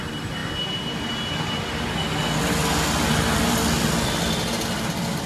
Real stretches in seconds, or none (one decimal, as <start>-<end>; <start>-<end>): 0.0-5.3